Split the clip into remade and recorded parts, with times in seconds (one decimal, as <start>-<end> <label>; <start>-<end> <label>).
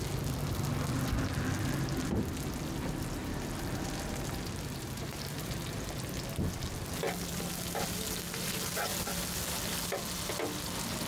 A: 0.0-3.2 recorded; 3.2-5.9 remade; 5.9-11.1 recorded